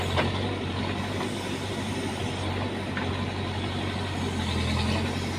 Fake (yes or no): no